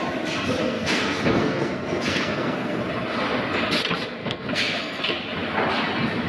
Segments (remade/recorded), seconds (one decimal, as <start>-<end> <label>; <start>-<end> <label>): 0.0-0.6 recorded; 0.6-2.8 remade; 2.8-4.2 recorded; 4.2-5.0 remade; 5.0-6.3 recorded